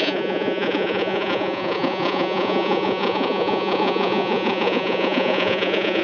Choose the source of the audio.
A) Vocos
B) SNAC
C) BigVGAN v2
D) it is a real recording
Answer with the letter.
A